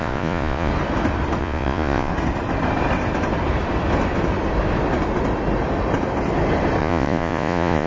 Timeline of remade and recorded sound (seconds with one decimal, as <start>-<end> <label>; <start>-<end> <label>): 0.0-0.7 remade; 0.7-1.4 recorded; 1.4-2.1 remade; 2.1-6.8 recorded; 6.8-7.9 remade